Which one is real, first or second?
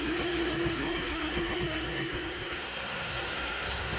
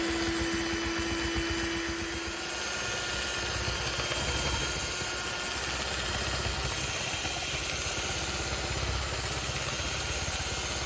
second